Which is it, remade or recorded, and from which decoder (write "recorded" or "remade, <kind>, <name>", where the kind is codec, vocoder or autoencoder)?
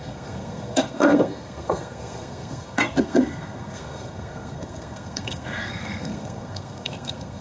remade, codec, SNAC